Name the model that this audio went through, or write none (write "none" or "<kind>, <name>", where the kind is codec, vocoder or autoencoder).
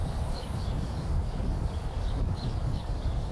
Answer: codec, DAC